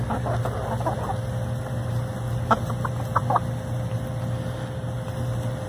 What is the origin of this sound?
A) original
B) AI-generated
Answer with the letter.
A